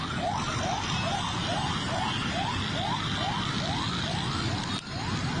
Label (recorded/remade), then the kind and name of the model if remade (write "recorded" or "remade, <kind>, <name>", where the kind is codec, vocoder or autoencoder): recorded